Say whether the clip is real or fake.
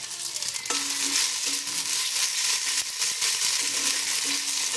real